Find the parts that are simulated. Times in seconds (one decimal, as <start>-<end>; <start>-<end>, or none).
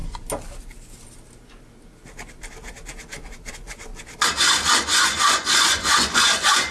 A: 3.5-3.9; 4.7-6.7